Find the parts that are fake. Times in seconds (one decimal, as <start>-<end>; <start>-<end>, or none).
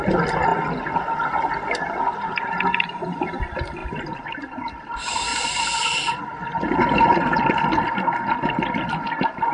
0.5-1.5; 5.3-6.1